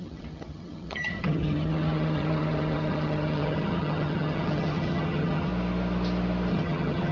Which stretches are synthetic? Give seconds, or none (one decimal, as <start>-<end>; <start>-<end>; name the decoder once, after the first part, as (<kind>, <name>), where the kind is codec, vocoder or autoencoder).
0.0-5.5 (vocoder, HiFi-GAN); 6.5-7.1